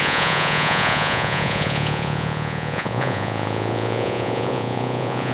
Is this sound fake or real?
fake